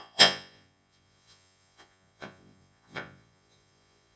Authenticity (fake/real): fake